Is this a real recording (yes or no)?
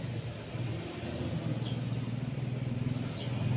yes